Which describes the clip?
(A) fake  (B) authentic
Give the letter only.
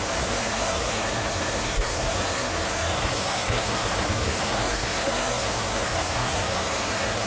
A